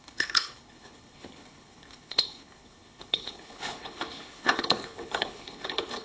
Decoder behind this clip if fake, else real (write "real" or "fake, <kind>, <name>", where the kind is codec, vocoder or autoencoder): fake, codec, HILCodec